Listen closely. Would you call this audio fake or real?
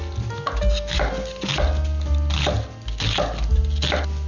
real